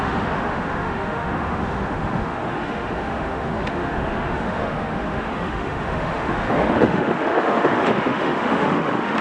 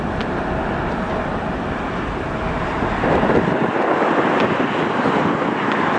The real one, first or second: second